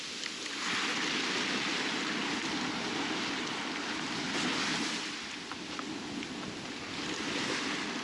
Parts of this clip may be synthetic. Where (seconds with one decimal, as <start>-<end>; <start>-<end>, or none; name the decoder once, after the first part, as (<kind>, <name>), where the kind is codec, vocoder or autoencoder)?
none